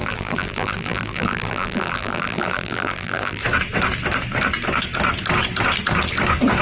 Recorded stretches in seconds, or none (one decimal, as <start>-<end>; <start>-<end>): 3.4-6.6